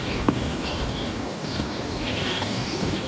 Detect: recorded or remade remade